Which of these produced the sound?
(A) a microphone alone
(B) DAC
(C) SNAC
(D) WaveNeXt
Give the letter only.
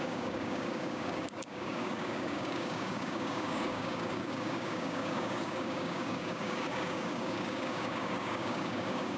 B